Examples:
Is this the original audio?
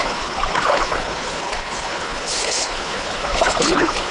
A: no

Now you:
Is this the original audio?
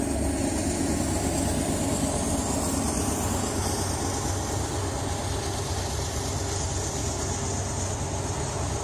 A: yes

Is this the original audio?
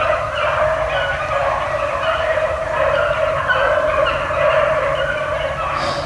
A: yes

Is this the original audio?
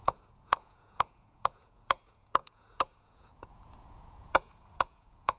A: no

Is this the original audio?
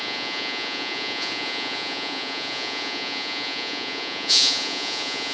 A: no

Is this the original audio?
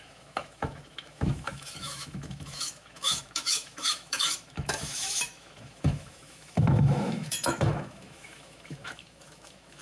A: no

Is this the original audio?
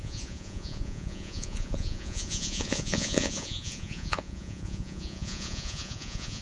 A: no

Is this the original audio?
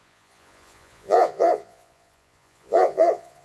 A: no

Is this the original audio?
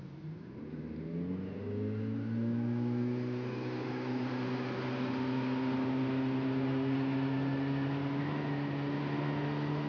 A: yes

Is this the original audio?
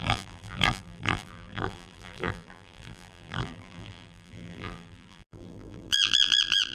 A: no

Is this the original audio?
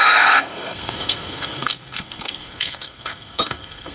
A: no